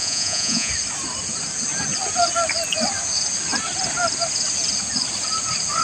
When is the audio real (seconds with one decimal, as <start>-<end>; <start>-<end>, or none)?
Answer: 0.7-5.8